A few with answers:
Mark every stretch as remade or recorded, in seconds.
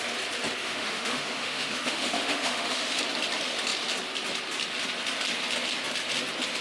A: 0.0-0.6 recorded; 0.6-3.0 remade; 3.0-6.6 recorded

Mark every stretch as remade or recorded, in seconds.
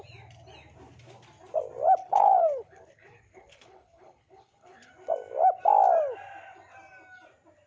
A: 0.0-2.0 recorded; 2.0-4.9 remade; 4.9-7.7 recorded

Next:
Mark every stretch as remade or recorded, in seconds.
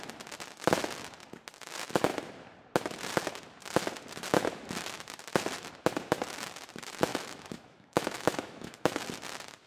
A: 0.0-7.1 recorded; 7.1-9.0 remade; 9.0-9.7 recorded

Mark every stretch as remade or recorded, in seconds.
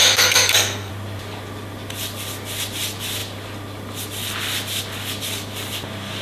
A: 0.0-0.9 remade; 0.9-6.2 recorded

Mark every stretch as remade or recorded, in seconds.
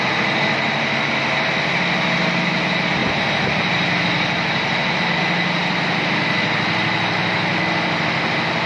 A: 0.0-8.7 recorded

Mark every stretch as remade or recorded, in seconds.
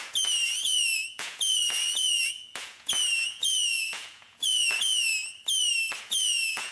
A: 0.0-5.1 remade; 5.1-6.0 recorded; 6.0-6.7 remade